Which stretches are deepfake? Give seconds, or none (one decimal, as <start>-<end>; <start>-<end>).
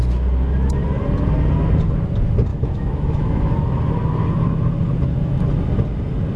2.5-3.5